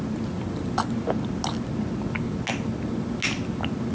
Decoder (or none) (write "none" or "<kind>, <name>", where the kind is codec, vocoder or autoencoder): none